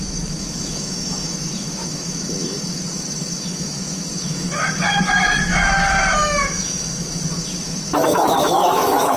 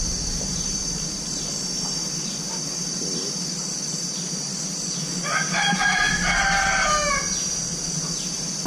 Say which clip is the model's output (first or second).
first